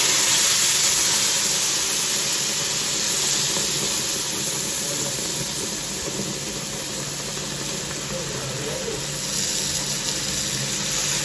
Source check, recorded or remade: recorded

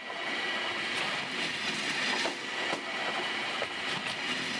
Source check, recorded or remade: recorded